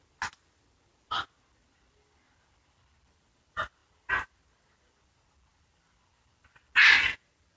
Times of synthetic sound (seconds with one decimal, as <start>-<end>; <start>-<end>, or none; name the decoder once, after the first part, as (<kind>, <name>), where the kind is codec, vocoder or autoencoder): none